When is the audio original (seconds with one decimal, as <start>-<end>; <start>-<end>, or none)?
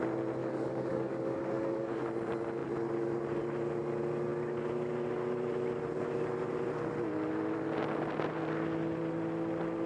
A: 0.0-0.4; 2.0-9.9